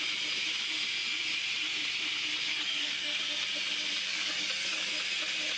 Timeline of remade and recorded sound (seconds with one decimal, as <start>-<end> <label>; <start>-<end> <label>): 0.0-2.5 recorded; 2.5-3.2 remade; 3.2-4.1 recorded; 4.1-4.9 remade; 4.9-5.6 recorded